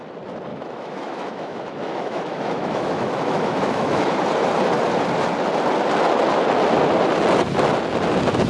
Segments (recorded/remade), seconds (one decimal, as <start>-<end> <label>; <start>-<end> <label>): 0.0-0.5 recorded; 0.5-4.0 remade; 4.0-8.5 recorded

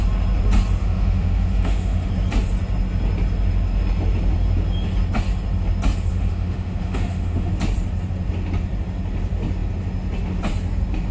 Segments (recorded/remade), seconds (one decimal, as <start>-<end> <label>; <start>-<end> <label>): 0.0-0.8 recorded; 0.8-2.1 remade; 2.1-6.1 recorded; 6.1-7.5 remade; 7.5-11.1 recorded